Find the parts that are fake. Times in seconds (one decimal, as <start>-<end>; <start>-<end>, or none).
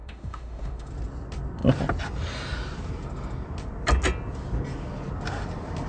0.0-0.9